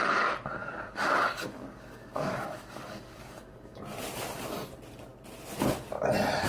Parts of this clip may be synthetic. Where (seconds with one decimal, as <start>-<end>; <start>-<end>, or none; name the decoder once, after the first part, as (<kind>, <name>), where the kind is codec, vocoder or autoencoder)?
0.6-3.8 (codec, DAC)